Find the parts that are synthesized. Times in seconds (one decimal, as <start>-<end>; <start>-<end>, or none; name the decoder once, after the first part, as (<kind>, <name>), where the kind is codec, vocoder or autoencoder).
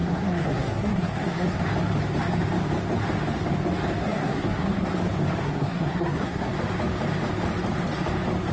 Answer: 0.0-1.6 (codec, SNAC); 4.0-4.9; 5.4-6.5